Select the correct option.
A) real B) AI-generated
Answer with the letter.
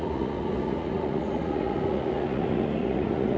B